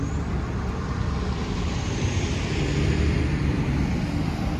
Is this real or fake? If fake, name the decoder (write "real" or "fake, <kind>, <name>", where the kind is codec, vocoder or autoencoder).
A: real